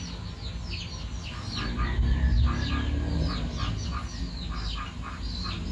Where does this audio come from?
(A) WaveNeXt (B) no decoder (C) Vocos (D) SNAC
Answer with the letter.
B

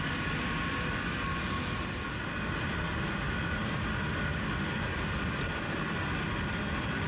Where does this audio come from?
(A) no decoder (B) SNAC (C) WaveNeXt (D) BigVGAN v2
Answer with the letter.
A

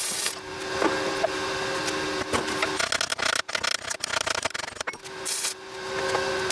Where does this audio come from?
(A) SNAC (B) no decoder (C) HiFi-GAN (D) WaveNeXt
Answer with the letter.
B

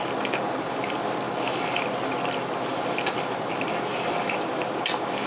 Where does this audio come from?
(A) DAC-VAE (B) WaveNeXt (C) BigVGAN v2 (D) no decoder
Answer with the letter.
D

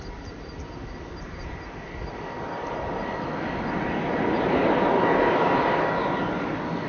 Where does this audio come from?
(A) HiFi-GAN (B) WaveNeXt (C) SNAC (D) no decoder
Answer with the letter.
D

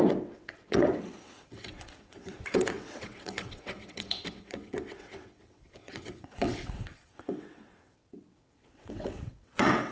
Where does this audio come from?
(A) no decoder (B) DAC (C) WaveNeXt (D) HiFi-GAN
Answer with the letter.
C